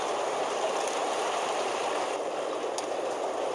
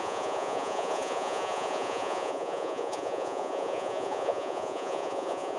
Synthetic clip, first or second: second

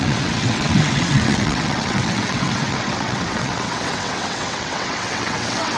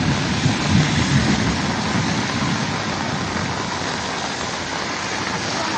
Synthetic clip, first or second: first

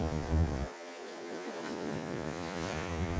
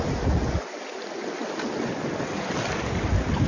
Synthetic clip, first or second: first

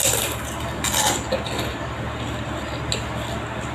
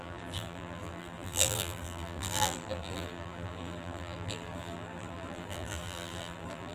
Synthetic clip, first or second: second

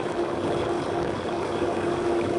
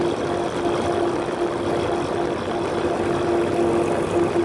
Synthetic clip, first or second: first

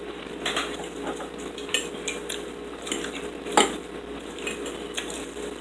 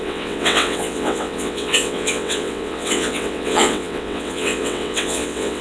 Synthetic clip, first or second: second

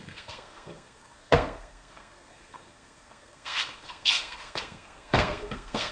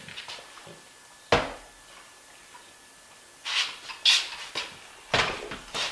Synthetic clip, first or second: first